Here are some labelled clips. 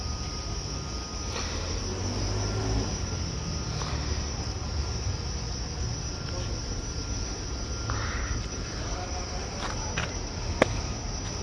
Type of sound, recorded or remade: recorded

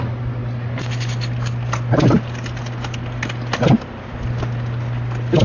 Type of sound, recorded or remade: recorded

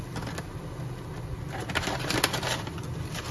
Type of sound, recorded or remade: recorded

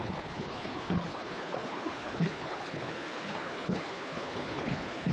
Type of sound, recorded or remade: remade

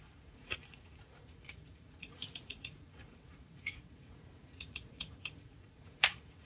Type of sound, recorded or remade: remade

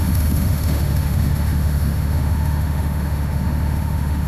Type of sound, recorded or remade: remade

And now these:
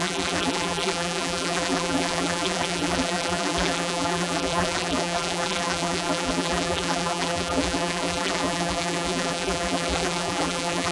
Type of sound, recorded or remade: remade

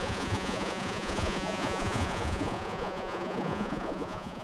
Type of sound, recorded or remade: remade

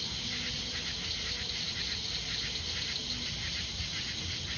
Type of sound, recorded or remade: recorded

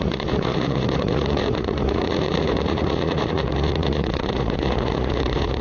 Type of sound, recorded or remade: remade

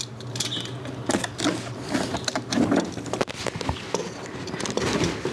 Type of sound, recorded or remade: recorded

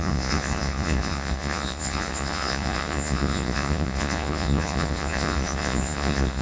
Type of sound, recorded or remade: remade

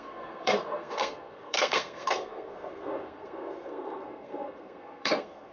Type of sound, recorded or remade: remade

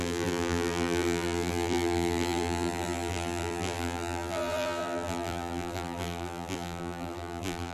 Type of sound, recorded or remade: remade